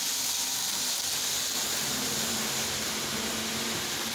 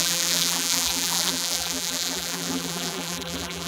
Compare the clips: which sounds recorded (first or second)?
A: first